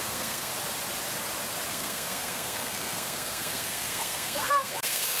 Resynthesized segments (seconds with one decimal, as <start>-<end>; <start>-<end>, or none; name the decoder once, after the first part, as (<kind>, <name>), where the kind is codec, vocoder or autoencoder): 0.0-0.5 (codec, SNAC); 1.7-5.2

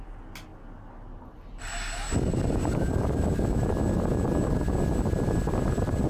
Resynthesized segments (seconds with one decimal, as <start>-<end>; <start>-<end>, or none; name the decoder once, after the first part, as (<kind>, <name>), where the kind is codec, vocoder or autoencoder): none

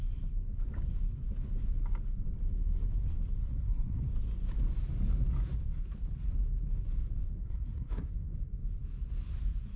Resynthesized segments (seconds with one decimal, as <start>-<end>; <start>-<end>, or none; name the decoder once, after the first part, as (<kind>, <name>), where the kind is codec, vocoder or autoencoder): 3.4-4.0 (codec, SNAC); 7.4-8.1

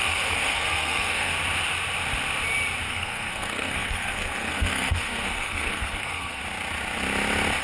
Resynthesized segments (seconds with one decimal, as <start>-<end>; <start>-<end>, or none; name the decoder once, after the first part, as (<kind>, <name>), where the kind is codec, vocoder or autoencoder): 0.0-1.3 (codec, SNAC); 2.9-6.4